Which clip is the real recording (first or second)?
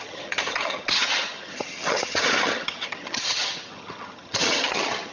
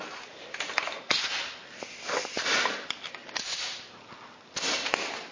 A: second